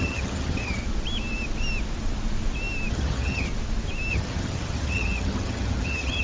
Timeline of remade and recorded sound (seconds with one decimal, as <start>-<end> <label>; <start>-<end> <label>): 0.0-0.8 remade; 0.8-2.9 recorded; 2.9-3.5 remade; 3.5-4.1 recorded; 4.1-6.2 remade